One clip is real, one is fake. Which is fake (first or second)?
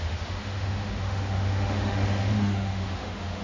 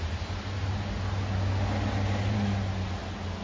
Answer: first